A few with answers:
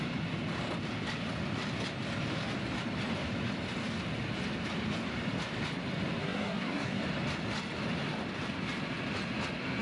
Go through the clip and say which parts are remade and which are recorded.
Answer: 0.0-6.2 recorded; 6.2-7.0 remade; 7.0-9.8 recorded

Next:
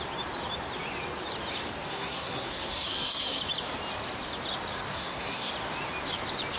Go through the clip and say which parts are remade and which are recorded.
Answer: 0.0-1.9 recorded; 1.9-3.4 remade; 3.4-4.9 recorded; 4.9-5.5 remade; 5.5-6.6 recorded

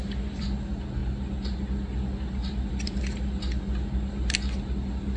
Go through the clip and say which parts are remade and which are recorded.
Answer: 0.0-5.2 recorded

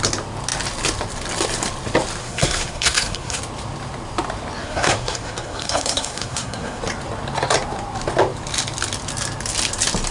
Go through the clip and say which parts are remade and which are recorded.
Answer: 0.0-2.2 recorded; 2.2-3.4 remade; 3.4-4.6 recorded; 4.6-6.8 remade; 6.8-10.1 recorded

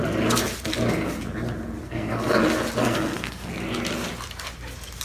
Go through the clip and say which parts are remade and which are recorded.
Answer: 0.0-1.8 recorded; 1.8-2.4 remade; 2.4-2.8 recorded; 2.8-3.5 remade; 3.5-5.0 recorded

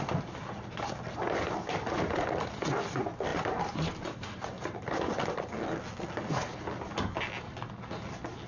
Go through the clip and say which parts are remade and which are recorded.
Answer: 0.0-8.5 recorded

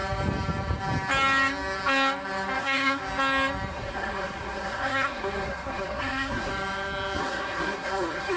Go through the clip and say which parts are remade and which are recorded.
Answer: 0.0-2.6 recorded; 2.6-3.0 remade; 3.0-3.7 recorded; 3.7-6.5 remade; 6.5-7.2 recorded; 7.2-8.4 remade

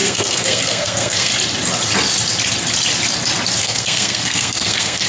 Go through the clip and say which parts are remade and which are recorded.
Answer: 0.0-1.3 remade; 1.3-3.6 recorded; 3.6-5.1 remade